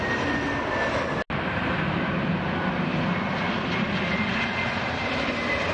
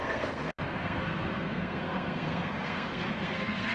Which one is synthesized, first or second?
second